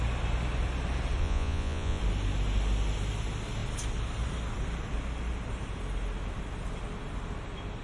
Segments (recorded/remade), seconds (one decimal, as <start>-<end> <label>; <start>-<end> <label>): 0.0-1.2 recorded; 1.2-2.0 remade; 2.0-7.8 recorded